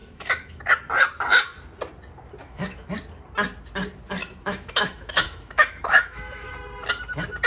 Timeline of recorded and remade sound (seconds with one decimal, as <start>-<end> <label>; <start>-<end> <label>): 0.0-0.6 remade; 0.6-2.4 recorded; 2.4-2.9 remade; 2.9-4.2 recorded; 4.2-6.5 remade; 6.5-7.5 recorded